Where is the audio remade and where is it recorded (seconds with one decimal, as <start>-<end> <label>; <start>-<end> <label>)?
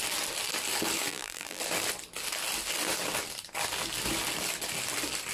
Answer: 0.0-1.1 recorded; 1.1-1.6 remade; 1.6-5.3 recorded